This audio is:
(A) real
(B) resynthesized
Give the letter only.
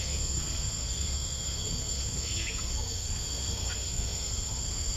B